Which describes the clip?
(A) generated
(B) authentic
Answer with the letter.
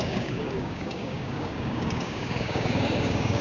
A